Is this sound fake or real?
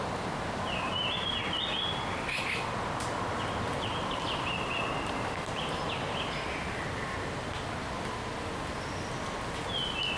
real